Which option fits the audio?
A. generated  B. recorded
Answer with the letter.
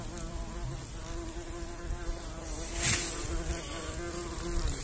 B